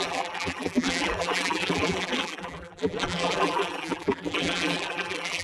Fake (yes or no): yes